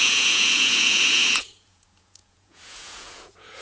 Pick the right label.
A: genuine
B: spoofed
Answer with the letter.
B